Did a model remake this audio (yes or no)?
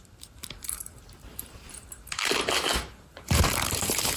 yes